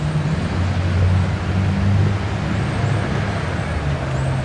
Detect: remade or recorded recorded